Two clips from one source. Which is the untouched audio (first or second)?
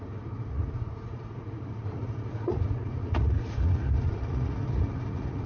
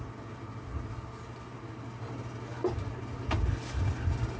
second